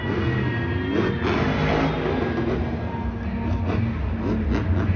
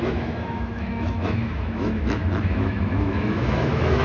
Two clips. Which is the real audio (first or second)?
first